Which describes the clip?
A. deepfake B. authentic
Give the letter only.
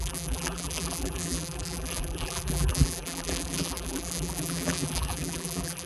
A